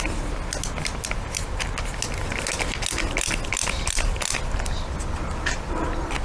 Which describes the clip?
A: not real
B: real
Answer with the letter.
B